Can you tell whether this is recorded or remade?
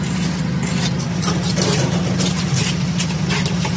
recorded